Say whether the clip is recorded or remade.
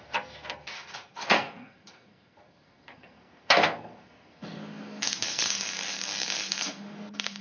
remade